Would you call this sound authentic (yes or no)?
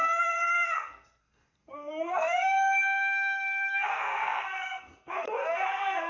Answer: no